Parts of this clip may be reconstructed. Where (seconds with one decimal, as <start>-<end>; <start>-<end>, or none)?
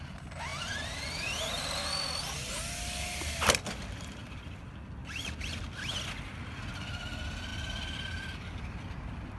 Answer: none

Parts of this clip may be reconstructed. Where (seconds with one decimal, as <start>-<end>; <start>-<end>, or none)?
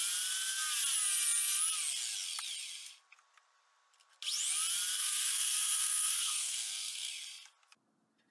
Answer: 5.0-7.1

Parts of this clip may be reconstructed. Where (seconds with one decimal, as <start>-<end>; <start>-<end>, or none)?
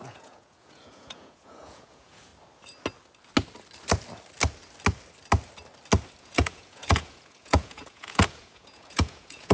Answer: 0.0-2.3; 6.2-9.5